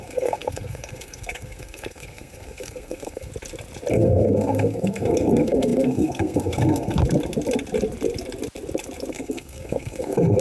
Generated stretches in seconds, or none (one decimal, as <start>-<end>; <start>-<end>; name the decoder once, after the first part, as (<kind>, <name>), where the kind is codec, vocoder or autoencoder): 0.0-3.3 (codec, SNAC); 3.9-7.0; 9.1-10.4